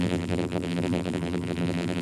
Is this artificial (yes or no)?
yes